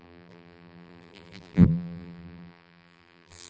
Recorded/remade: remade